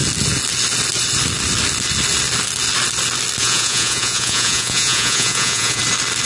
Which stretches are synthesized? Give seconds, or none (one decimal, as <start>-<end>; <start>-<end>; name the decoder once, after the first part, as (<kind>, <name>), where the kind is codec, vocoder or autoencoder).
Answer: 3.4-5.8 (vocoder, Vocos)